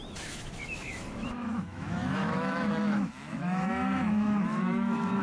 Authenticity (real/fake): fake